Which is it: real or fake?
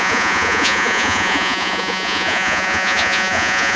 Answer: fake